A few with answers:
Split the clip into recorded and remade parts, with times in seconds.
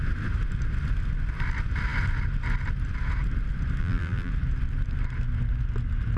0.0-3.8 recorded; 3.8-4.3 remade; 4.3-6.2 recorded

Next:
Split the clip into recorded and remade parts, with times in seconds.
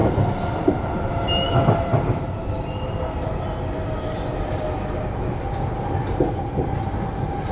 0.0-7.5 recorded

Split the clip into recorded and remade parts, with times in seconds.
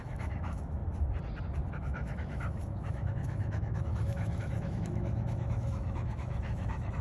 0.0-0.8 remade; 0.8-1.7 recorded; 1.7-7.0 remade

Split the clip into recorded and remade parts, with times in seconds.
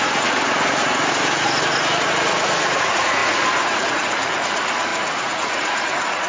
0.0-6.3 remade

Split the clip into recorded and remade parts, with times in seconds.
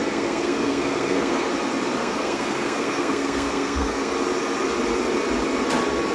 0.0-1.5 remade; 1.5-2.0 recorded; 2.0-4.1 remade; 4.1-6.1 recorded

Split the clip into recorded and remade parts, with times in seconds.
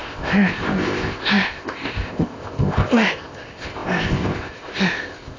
0.0-5.4 remade